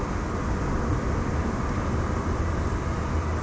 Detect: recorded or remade recorded